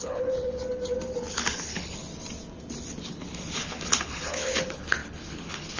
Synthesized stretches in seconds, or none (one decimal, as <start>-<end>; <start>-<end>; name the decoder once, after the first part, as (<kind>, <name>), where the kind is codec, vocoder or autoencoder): 0.0-0.6 (codec, HILCodec); 1.3-2.0; 3.0-5.8